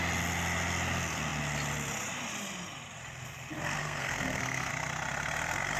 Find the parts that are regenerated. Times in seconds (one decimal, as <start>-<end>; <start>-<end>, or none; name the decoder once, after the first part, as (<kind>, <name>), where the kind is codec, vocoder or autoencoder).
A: 3.8-4.7 (codec, SNAC)